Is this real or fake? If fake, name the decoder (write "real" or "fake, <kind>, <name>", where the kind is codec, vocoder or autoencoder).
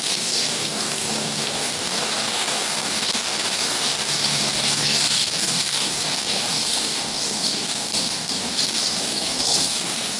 fake, codec, DAC